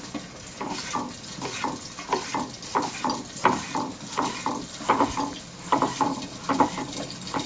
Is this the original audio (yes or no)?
yes